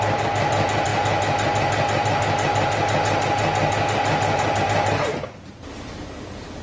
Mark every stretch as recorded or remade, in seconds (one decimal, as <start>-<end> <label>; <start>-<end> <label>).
0.0-0.9 remade; 0.9-4.6 recorded; 4.6-6.6 remade